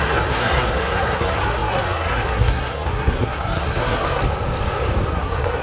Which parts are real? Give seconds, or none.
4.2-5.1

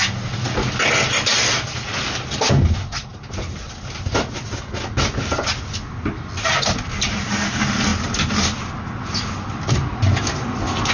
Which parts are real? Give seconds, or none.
0.0-10.9

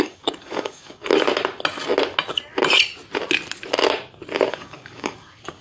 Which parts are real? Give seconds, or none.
1.1-4.5

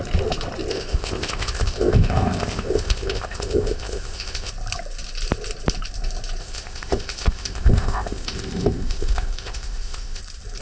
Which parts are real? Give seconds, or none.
0.0-0.7; 4.5-6.4; 10.2-10.6

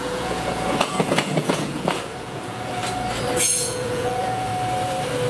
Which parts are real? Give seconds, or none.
2.8-3.4; 4.5-5.3

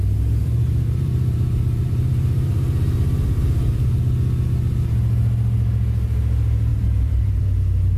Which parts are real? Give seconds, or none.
0.0-0.4; 4.0-6.7; 7.4-8.0

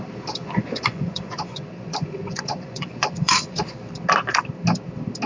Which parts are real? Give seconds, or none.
0.0-0.4; 3.6-5.3